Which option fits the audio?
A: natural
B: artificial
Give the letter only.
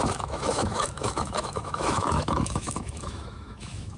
B